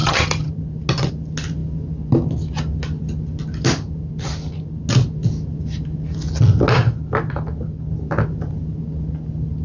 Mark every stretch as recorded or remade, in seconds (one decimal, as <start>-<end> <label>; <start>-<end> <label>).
0.0-0.5 remade; 0.5-9.6 recorded